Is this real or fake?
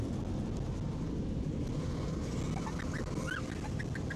real